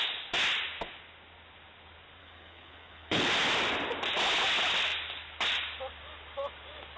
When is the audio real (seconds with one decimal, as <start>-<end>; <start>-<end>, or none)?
0.0-2.2; 3.2-7.0